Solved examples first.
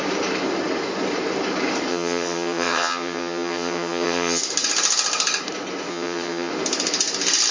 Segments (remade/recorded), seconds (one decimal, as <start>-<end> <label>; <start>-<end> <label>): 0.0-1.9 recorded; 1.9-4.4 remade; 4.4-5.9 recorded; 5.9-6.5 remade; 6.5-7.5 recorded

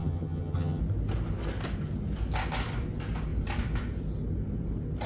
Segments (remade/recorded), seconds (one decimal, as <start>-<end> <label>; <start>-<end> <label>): 0.0-0.8 remade; 0.8-5.1 recorded

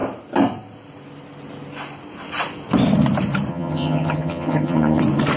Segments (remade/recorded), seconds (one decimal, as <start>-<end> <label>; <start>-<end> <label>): 0.0-3.5 recorded; 3.5-5.0 remade; 5.0-5.4 recorded

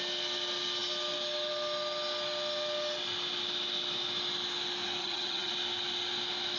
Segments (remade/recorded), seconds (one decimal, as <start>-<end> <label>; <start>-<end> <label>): 0.0-5.0 recorded; 5.0-5.5 remade; 5.5-6.6 recorded

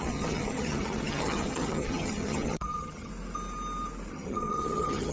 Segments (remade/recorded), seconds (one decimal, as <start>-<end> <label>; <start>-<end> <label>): 0.0-3.1 remade; 3.1-4.1 recorded; 4.1-5.1 remade

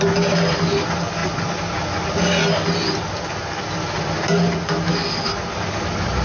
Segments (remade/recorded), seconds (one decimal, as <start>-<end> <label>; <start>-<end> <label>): 0.0-6.2 recorded

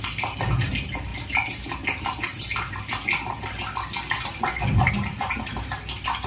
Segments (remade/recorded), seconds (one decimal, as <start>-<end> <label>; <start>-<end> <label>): 0.0-6.3 recorded